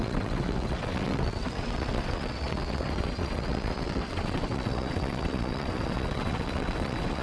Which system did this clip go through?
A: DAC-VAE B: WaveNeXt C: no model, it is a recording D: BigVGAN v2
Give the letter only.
B